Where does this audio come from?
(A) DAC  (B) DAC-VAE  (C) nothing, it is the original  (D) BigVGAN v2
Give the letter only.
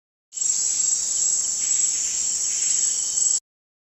C